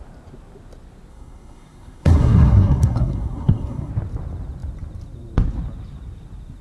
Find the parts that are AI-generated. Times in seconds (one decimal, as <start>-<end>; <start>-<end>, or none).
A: 1.1-3.9